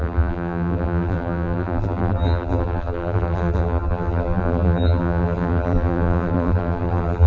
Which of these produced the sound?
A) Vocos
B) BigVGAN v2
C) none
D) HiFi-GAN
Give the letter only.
B